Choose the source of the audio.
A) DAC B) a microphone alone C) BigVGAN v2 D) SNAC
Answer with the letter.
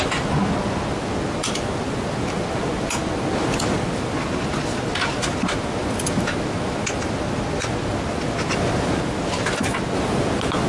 B